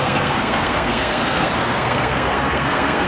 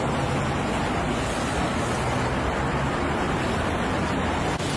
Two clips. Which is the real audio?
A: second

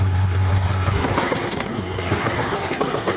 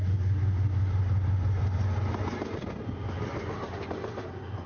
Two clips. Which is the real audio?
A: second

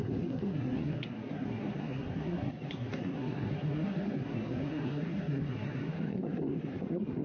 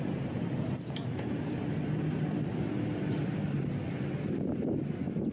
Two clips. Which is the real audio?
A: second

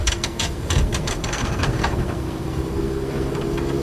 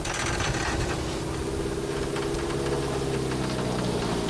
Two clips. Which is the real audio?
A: second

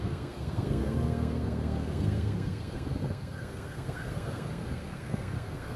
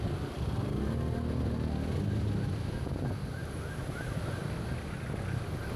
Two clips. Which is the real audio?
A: second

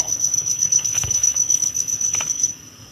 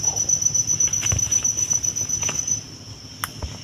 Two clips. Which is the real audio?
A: second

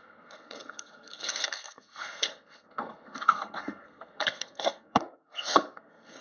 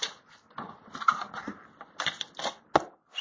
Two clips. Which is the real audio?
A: second